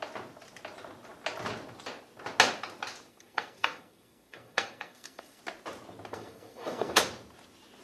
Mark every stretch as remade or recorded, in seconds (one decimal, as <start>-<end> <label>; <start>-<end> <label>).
0.0-3.1 recorded; 3.1-5.4 remade; 5.4-6.1 recorded; 6.1-7.0 remade; 7.0-7.8 recorded